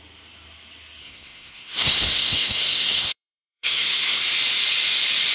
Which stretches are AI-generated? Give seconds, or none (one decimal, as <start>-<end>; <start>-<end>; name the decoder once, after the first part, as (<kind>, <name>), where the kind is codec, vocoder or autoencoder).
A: 1.0-4.2 (codec, SNAC)